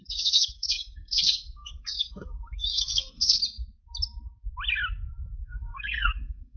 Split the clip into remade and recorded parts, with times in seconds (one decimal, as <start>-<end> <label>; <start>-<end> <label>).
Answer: 0.0-3.4 remade; 3.4-5.4 recorded; 5.4-6.6 remade